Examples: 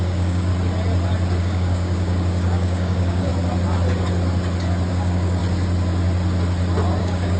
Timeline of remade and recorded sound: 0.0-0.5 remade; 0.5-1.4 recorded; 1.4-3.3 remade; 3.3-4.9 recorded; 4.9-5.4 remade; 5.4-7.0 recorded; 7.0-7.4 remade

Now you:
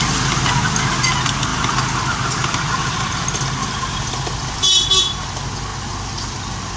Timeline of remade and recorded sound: 0.0-1.5 recorded; 1.5-2.5 remade; 2.5-6.8 recorded